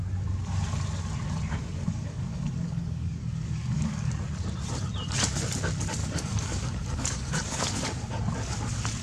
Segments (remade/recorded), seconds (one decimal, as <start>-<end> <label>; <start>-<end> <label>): 0.0-1.9 recorded; 1.9-4.1 remade; 4.1-6.0 recorded; 6.0-8.2 remade; 8.2-9.0 recorded